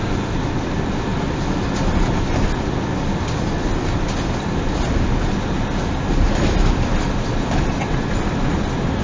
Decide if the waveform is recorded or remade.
recorded